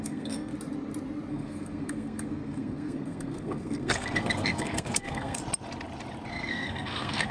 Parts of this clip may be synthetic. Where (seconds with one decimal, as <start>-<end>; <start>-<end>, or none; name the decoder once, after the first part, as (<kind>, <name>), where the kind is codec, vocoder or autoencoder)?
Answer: 0.0-0.5 (codec, SNAC); 1.3-5.4; 6.3-7.3